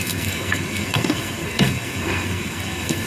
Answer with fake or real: fake